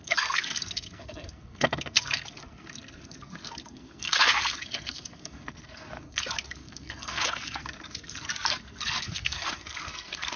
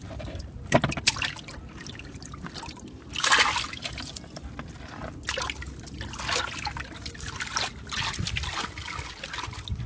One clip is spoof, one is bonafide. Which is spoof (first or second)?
first